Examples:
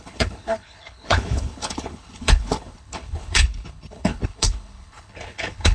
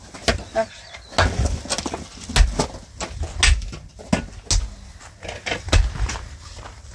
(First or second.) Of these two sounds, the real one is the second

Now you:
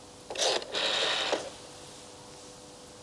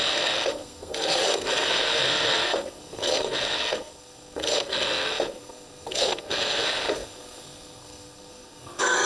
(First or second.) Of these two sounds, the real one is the first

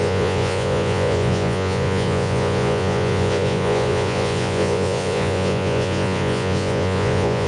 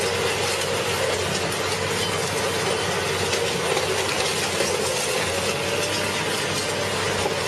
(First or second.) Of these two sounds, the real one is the second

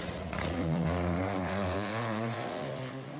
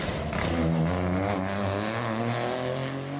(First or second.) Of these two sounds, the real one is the second